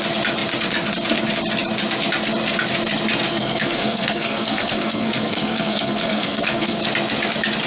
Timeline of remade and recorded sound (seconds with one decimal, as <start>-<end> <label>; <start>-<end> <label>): 0.0-3.3 recorded; 3.3-6.8 remade; 6.8-7.7 recorded